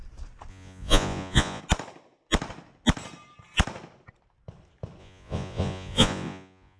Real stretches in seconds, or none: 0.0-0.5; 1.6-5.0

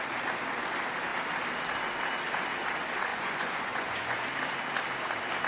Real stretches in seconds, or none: 0.0-3.1; 4.3-5.5

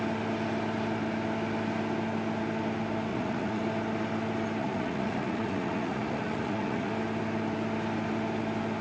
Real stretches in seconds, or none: 0.0-3.1; 3.6-4.6; 6.9-8.8